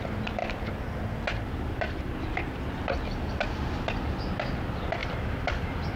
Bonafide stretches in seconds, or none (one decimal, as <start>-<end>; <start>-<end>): 0.0-6.0

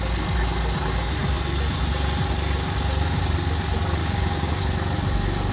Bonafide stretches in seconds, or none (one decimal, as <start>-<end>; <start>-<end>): 0.0-4.0; 4.5-5.5

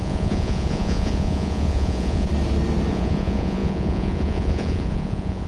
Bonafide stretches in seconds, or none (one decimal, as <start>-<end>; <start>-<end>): 2.3-2.9